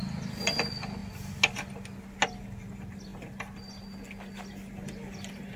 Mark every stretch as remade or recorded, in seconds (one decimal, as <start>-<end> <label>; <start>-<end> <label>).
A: 0.0-5.6 recorded